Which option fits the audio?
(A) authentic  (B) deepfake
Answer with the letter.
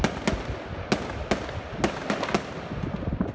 A